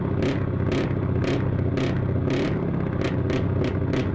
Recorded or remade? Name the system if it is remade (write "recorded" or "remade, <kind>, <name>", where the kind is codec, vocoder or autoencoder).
recorded